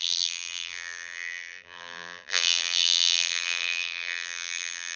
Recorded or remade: remade